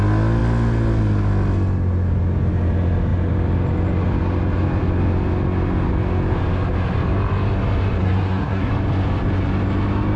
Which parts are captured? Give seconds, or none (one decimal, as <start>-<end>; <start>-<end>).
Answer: 0.0-8.0; 8.7-10.2